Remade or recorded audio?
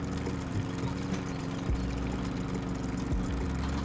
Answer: recorded